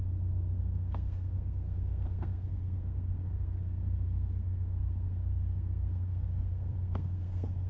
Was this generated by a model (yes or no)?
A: yes